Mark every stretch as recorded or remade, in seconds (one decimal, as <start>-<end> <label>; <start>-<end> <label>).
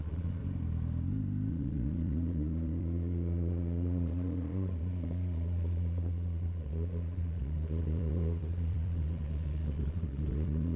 0.0-0.4 remade; 0.4-1.5 recorded; 1.5-10.8 remade